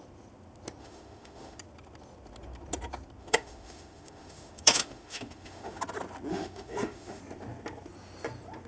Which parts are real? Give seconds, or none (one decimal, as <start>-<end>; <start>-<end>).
0.0-0.8; 1.6-3.2; 5.8-6.3; 7.2-8.7